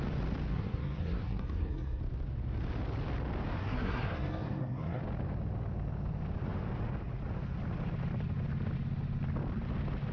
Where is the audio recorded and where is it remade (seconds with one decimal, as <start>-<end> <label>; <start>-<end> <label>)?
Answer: 0.0-0.5 recorded; 0.5-2.0 remade; 2.0-3.6 recorded; 3.6-5.0 remade; 5.0-10.1 recorded

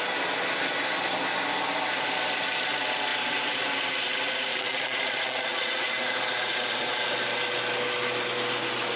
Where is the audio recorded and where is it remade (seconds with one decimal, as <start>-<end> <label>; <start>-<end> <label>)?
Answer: 0.0-4.5 recorded; 4.5-5.9 remade; 5.9-9.0 recorded